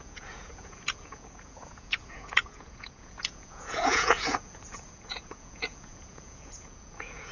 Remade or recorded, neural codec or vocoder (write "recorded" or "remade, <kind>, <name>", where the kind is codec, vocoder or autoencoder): remade, vocoder, Vocos